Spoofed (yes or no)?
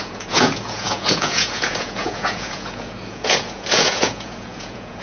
yes